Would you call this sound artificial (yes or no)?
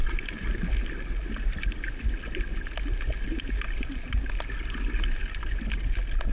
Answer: no